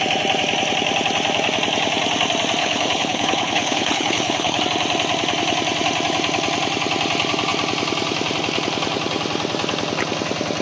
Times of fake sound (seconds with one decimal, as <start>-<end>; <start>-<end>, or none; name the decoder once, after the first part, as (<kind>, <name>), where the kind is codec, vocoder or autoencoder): 2.6-4.6 (codec, HILCodec)